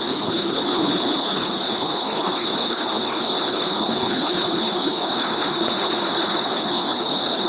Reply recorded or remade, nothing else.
remade